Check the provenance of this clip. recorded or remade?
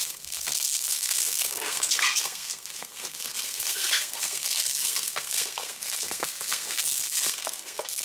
remade